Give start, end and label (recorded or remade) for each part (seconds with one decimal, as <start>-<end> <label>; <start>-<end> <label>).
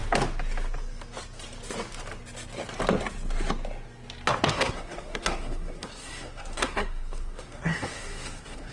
0.0-4.5 recorded; 4.5-8.7 remade